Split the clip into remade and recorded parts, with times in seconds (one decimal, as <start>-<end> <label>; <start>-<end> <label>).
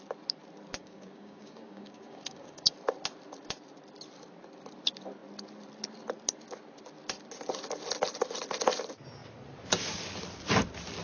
0.0-0.8 recorded; 0.8-2.7 remade; 2.7-11.0 recorded